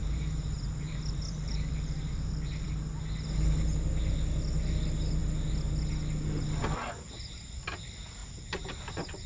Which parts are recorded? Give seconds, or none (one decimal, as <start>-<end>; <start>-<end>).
2.7-8.2